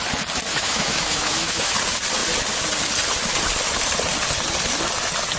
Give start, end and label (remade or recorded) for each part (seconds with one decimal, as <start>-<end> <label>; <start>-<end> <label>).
0.0-0.5 recorded; 0.5-1.7 remade; 1.7-5.4 recorded